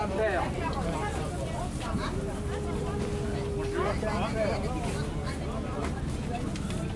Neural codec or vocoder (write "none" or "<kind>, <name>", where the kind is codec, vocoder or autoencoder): none